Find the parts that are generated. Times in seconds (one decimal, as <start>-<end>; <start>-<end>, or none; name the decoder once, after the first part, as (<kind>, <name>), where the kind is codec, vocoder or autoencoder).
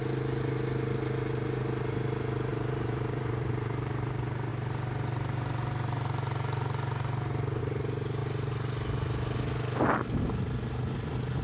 2.5-4.1 (vocoder, BigVGAN v2)